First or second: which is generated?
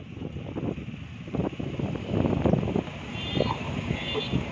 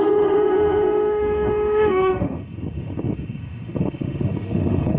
second